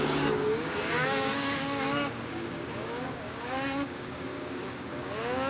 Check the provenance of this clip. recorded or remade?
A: remade